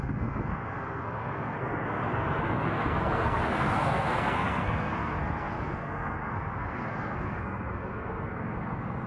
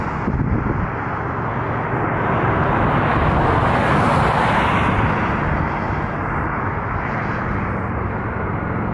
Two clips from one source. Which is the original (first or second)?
second